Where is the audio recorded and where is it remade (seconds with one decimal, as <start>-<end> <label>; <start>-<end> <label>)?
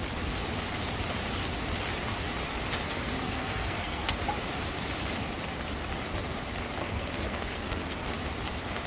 0.0-2.9 recorded; 2.9-4.2 remade; 4.2-6.8 recorded; 6.8-8.1 remade; 8.1-8.9 recorded